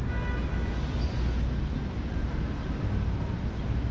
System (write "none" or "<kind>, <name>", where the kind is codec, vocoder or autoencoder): none